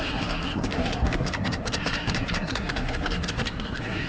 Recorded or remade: remade